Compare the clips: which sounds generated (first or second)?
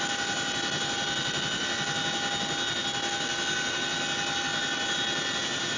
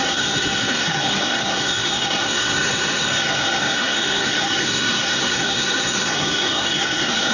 second